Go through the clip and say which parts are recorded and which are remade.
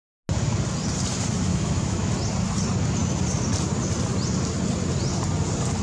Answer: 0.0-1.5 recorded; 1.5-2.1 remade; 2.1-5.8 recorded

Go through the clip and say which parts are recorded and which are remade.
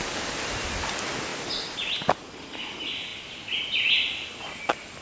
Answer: 0.0-5.0 recorded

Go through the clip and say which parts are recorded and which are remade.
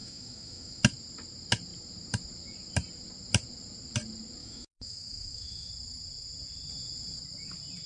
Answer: 0.0-0.8 remade; 0.8-4.4 recorded; 4.4-5.7 remade; 5.7-7.9 recorded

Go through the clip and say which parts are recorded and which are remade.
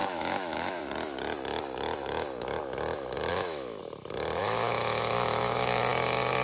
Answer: 0.0-0.8 remade; 0.8-3.3 recorded; 3.3-3.8 remade; 3.8-4.4 recorded; 4.4-5.8 remade; 5.8-6.4 recorded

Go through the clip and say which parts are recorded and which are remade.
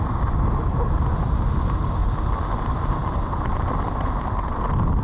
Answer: 0.0-5.0 recorded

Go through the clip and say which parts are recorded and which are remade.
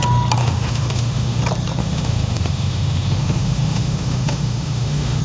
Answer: 0.0-0.4 recorded; 0.4-1.4 remade; 1.4-1.8 recorded; 1.8-5.2 remade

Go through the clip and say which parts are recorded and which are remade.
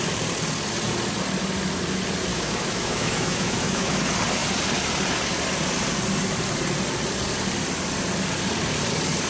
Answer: 0.0-2.3 recorded; 2.3-3.9 remade; 3.9-9.3 recorded